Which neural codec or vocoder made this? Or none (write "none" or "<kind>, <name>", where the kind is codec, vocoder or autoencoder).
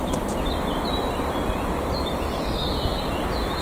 vocoder, BigVGAN v2